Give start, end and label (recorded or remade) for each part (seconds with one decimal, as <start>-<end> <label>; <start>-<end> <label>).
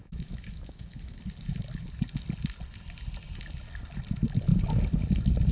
0.0-1.2 remade; 1.2-5.5 recorded